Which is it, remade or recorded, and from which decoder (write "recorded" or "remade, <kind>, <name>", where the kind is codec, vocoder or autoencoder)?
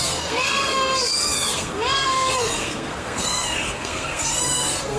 remade, codec, SNAC